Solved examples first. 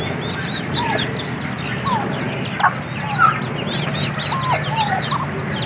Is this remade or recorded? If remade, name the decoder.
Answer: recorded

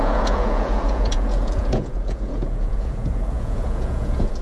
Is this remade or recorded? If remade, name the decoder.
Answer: remade, vocoder, Vocos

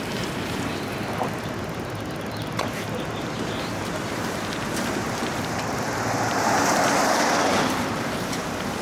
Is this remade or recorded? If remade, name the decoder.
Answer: remade, vocoder, BigVGAN v2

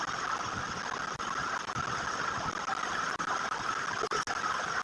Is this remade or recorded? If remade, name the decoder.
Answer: recorded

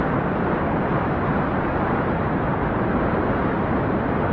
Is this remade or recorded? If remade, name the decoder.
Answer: recorded